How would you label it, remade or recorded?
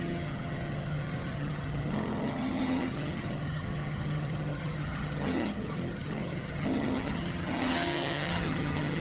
remade